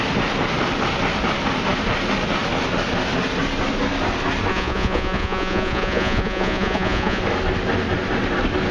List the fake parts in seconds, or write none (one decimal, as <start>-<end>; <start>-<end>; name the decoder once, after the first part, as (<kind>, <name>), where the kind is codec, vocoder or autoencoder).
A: 4.5-7.2 (vocoder, Vocos)